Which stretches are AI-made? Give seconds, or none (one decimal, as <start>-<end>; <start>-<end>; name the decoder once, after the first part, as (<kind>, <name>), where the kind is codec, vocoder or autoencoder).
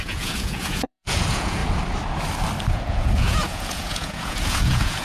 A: 0.0-1.6 (vocoder, Vocos); 2.7-5.0